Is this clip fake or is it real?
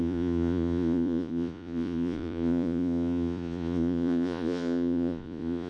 fake